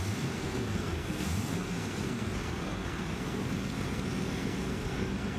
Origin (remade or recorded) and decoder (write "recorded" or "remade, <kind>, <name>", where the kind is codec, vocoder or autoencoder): remade, codec, SNAC